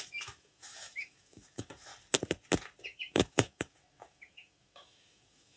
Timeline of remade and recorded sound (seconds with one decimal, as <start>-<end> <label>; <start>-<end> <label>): 0.0-1.9 remade; 1.9-2.8 recorded; 2.8-5.6 remade